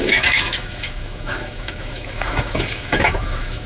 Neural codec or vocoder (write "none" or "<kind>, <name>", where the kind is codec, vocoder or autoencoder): autoencoder, DAC-VAE